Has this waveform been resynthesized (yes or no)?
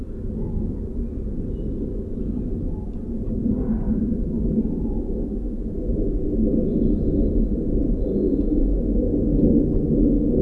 no